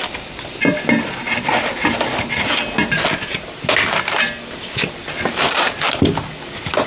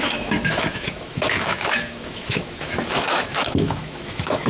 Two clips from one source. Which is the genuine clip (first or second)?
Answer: first